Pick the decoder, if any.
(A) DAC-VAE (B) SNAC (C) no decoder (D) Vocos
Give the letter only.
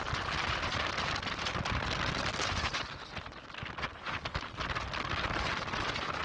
C